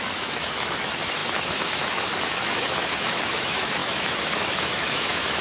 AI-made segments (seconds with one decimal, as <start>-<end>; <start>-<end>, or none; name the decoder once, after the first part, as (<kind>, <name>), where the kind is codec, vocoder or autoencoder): 0.0-5.4 (autoencoder, DAC-VAE)